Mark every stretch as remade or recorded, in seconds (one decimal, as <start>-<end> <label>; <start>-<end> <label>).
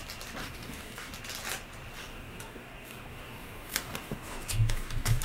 0.0-0.4 recorded; 0.4-1.1 remade; 1.1-2.0 recorded; 2.0-5.2 remade